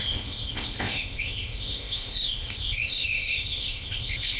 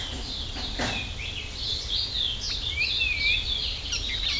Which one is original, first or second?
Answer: second